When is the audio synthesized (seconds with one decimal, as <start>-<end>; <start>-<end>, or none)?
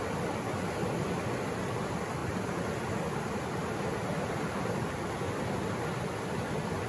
none